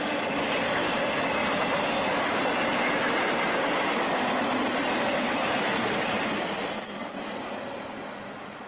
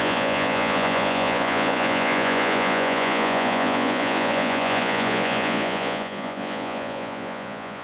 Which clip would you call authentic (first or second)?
first